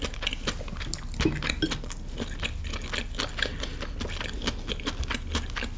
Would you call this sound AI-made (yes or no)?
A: no